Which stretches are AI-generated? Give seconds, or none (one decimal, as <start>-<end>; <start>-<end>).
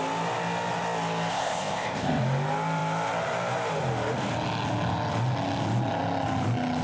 1.3-2.2